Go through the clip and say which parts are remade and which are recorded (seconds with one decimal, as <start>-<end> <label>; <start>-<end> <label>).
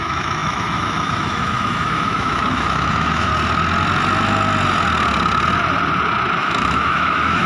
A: 0.0-3.3 remade; 3.3-6.4 recorded; 6.4-7.5 remade